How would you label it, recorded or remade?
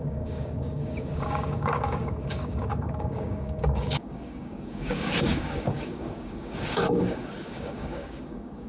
remade